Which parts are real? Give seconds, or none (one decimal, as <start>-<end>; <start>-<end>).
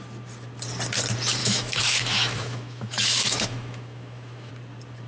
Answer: 0.0-1.4; 4.5-5.1